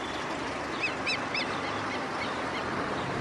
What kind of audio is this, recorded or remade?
recorded